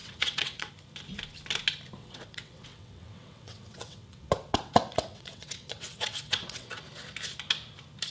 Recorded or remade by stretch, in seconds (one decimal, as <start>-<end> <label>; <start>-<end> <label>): 0.0-0.7 remade; 0.7-2.0 recorded; 2.0-6.8 remade; 6.8-8.1 recorded